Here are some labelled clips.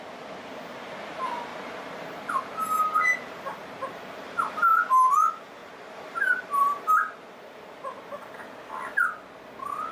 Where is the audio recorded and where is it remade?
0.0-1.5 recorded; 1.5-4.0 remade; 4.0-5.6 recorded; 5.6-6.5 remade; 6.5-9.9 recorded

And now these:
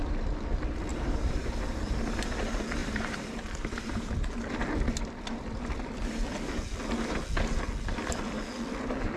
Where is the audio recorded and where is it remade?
0.0-0.9 recorded; 0.9-1.9 remade; 1.9-2.8 recorded; 2.8-4.1 remade; 4.1-9.2 recorded

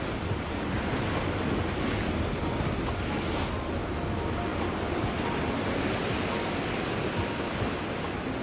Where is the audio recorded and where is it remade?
0.0-8.4 recorded

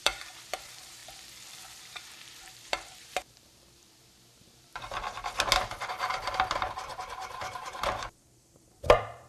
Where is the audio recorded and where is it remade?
0.0-1.0 remade; 1.0-1.6 recorded; 1.6-4.7 remade; 4.7-5.9 recorded; 5.9-9.3 remade

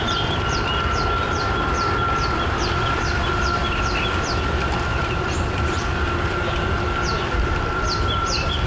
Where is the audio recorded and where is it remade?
0.0-8.7 remade

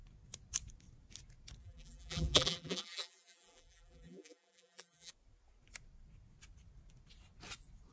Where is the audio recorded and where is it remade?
0.0-1.6 recorded; 1.6-5.1 remade; 5.1-7.9 recorded

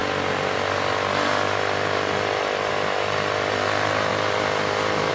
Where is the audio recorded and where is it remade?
0.0-2.7 remade; 2.7-5.1 recorded

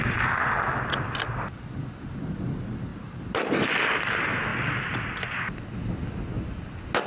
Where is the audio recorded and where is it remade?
0.0-2.9 recorded; 2.9-3.5 remade; 3.5-7.1 recorded